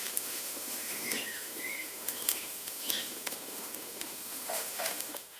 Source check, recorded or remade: remade